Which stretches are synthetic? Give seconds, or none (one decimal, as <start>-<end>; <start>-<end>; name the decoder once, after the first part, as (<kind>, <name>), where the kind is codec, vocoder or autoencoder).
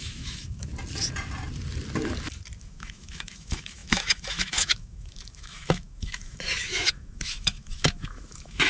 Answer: 0.0-0.7 (autoencoder, DAC-VAE); 2.6-8.7